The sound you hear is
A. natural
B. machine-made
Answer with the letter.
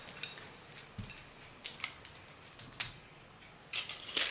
A